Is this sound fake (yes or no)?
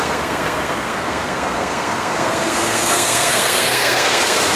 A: yes